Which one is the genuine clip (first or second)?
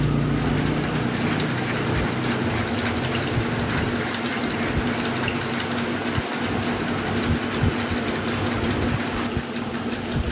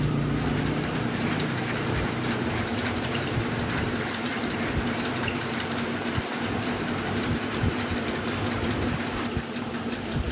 first